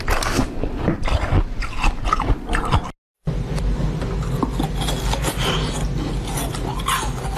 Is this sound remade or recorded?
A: recorded